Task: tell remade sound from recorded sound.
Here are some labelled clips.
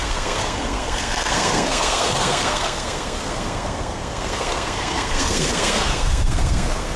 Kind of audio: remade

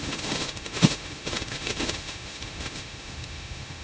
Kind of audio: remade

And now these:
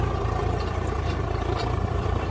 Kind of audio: remade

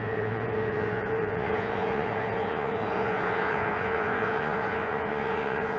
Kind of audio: remade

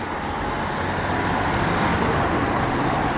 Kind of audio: recorded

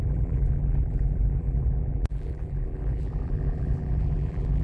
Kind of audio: remade